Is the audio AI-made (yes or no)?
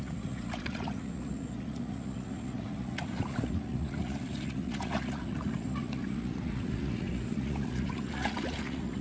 yes